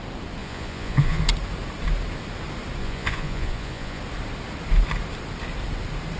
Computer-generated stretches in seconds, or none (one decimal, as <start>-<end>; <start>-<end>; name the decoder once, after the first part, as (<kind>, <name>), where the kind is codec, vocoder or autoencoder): 0.4-1.2 (vocoder, Vocos); 2.8-4.0